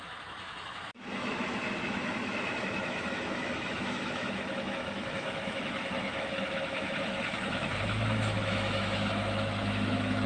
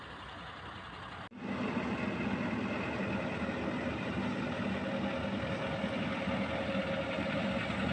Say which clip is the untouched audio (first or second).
second